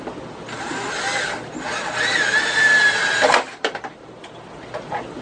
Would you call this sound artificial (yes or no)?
no